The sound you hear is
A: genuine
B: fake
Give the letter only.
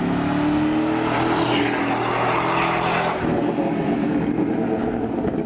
A